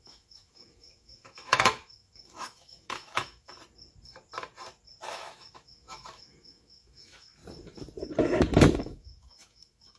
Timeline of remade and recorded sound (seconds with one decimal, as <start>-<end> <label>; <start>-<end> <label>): 0.0-3.5 remade; 3.5-5.1 recorded; 5.1-7.4 remade; 7.4-8.8 recorded; 8.8-10.0 remade